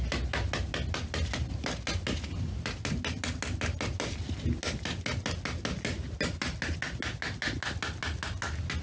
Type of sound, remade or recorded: recorded